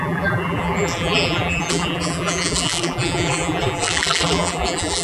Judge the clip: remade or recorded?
remade